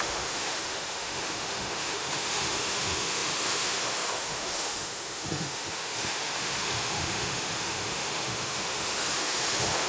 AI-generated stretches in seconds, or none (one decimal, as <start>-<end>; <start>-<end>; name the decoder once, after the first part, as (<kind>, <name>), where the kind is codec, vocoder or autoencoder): 0.0-9.9 (autoencoder, DAC-VAE)